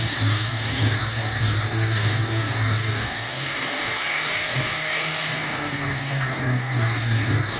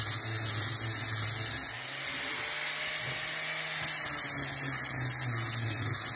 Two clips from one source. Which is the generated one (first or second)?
first